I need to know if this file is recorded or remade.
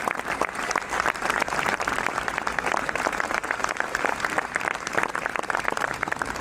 remade